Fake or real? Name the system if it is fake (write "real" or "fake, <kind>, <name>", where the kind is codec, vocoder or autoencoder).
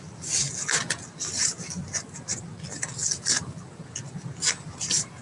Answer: real